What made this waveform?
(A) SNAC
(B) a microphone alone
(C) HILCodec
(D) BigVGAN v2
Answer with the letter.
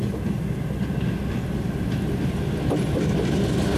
B